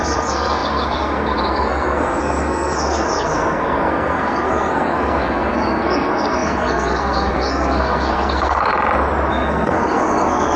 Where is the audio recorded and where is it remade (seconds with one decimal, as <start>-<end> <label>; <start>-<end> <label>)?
0.0-8.7 remade; 8.7-9.3 recorded; 9.3-10.6 remade